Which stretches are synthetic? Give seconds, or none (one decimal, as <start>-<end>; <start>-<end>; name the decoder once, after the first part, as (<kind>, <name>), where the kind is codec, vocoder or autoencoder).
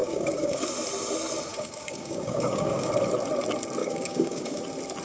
0.0-0.6 (codec, DAC); 1.5-2.9; 3.8-4.6